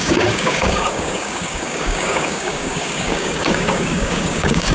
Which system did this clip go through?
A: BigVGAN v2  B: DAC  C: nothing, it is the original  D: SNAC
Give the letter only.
B